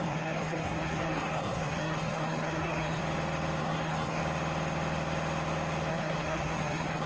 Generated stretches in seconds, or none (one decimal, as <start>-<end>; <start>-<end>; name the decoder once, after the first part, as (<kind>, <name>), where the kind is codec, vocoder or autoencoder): 0.0-3.0 (codec, SNAC); 3.6-4.2; 5.9-7.1